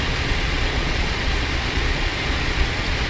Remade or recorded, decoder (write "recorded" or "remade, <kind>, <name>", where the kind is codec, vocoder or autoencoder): remade, vocoder, Vocos